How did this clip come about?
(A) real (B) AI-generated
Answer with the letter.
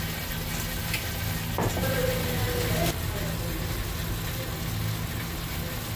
A